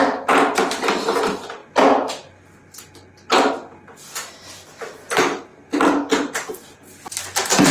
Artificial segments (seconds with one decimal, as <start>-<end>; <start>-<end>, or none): none